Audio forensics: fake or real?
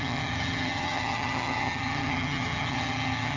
fake